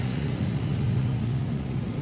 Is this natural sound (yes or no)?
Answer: no